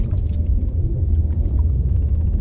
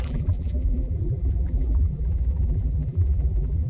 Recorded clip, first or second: first